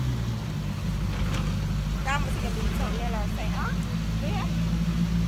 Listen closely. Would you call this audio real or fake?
real